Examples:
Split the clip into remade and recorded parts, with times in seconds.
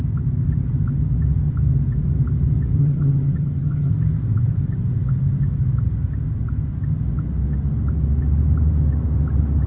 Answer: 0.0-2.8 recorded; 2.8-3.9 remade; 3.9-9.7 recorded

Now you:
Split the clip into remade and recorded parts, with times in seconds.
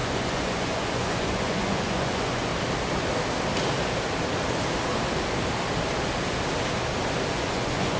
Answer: 0.0-2.5 remade; 2.5-7.3 recorded; 7.3-8.0 remade